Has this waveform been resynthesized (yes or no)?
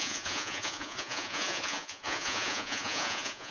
yes